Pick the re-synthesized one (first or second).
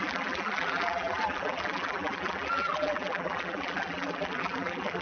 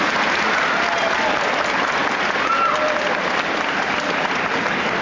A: first